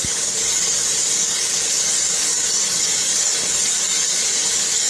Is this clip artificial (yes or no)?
yes